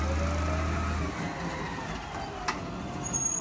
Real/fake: real